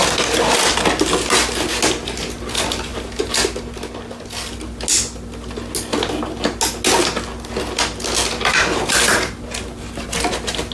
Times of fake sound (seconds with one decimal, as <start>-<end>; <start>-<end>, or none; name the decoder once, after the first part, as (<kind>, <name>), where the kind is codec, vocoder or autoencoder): none